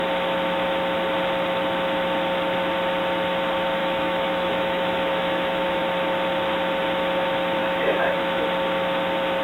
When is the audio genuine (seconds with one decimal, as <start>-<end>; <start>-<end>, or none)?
0.0-3.8; 5.8-7.6; 8.2-9.4